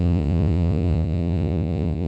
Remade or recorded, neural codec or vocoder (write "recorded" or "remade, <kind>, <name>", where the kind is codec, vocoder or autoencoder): remade, vocoder, Vocos